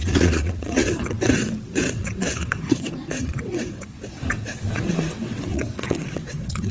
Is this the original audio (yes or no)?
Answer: no